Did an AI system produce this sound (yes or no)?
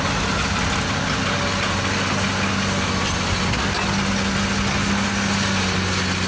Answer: no